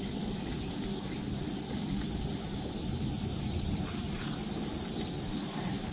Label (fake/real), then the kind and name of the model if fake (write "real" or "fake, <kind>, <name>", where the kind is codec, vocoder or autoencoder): fake, vocoder, BigVGAN v2